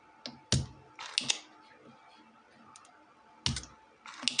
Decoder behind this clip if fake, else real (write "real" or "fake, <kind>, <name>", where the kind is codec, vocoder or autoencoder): real